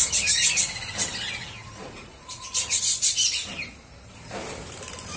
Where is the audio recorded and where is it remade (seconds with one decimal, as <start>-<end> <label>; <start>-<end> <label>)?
0.0-1.4 recorded; 1.4-2.8 remade; 2.8-5.2 recorded